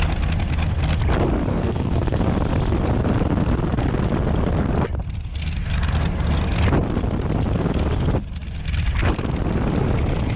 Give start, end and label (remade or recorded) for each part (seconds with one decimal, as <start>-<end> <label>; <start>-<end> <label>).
0.0-1.5 recorded; 1.5-2.2 remade; 2.2-10.4 recorded